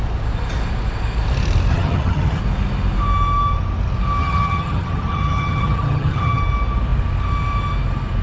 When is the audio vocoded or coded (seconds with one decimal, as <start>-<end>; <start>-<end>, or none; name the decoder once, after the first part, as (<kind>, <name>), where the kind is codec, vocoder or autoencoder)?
1.7-2.4 (vocoder, HiFi-GAN); 4.2-6.4

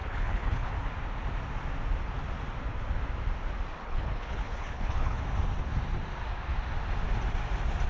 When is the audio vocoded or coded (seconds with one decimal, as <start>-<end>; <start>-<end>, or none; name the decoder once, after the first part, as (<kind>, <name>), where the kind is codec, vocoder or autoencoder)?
0.0-0.7 (codec, HILCodec); 3.8-5.2

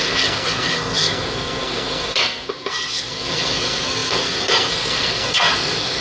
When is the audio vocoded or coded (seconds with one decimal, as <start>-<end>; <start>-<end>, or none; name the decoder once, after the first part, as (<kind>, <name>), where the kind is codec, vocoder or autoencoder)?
0.0-6.0 (codec, SNAC)

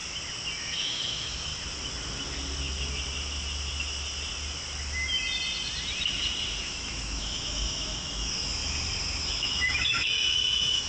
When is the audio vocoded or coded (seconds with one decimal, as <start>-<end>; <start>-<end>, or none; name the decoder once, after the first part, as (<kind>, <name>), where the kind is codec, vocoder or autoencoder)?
0.6-1.5 (autoencoder, DAC-VAE); 6.6-8.6; 9.2-10.9